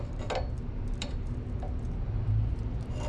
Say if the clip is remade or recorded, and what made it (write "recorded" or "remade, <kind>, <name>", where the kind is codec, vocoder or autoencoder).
recorded